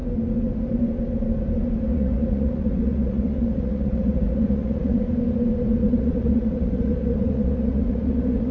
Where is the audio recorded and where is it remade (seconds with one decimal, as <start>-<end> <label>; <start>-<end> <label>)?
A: 0.0-1.9 recorded; 1.9-5.0 remade; 5.0-5.8 recorded; 5.8-8.5 remade